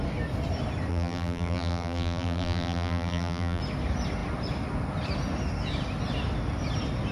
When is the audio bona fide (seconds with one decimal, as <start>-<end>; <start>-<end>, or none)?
0.0-0.9; 3.6-7.1